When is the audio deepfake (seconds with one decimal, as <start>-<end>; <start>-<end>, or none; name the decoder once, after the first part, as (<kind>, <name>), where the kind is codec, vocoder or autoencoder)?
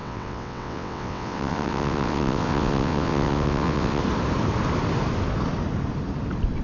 0.0-4.0 (vocoder, WaveNeXt)